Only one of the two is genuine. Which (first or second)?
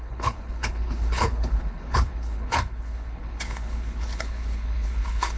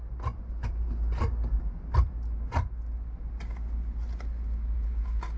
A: second